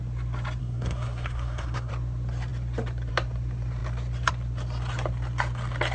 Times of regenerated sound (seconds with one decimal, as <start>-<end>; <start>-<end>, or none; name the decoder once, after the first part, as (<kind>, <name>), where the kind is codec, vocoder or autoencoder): 0.6-1.9 (codec, SNAC)